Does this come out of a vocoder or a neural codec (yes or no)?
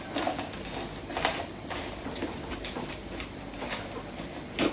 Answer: no